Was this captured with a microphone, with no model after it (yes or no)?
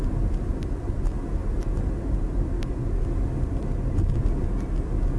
yes